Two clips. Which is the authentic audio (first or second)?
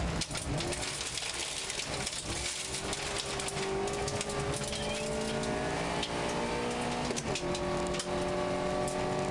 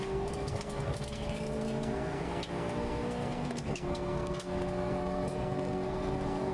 first